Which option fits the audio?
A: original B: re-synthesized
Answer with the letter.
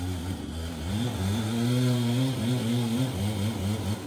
A